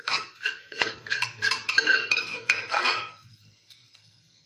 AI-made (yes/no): yes